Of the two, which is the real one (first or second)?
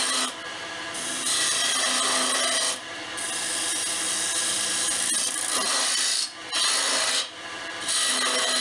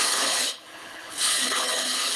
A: first